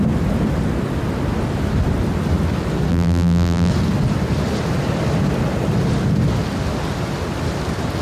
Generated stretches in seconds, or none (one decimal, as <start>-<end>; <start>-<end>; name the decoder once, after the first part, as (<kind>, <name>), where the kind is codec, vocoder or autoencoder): 2.9-3.7 (vocoder, BigVGAN v2)